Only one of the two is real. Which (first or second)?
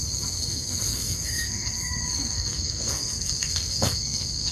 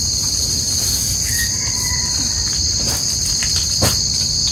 second